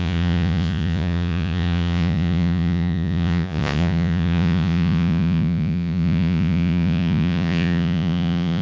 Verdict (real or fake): fake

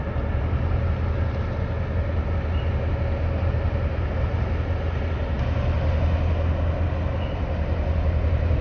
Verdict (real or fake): real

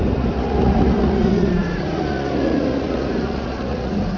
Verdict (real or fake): fake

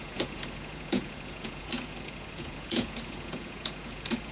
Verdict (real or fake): fake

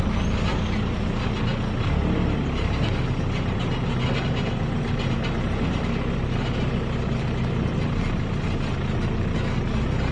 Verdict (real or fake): real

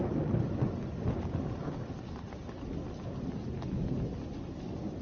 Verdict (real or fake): real